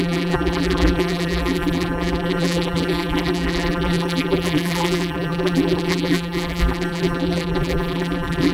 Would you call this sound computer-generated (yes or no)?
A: yes